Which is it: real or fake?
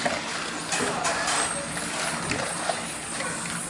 real